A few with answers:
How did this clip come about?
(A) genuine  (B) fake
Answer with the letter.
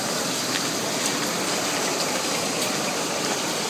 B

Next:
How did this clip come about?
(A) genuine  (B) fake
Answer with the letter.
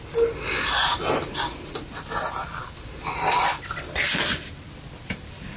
A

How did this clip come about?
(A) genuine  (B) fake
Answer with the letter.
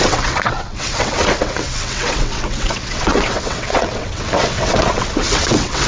B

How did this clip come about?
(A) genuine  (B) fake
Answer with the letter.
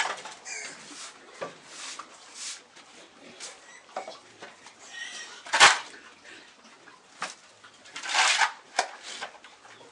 A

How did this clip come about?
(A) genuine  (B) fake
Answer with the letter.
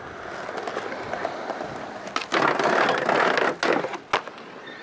A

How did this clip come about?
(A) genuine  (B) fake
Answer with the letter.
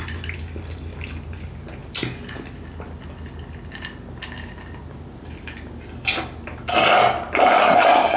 A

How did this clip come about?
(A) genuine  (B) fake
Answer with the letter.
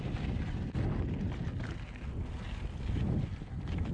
A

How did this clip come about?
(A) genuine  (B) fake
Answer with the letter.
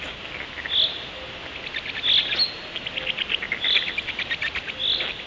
A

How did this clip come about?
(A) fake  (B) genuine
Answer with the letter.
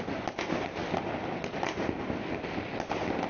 B